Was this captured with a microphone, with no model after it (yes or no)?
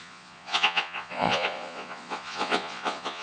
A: no